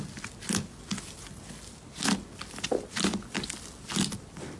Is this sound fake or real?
real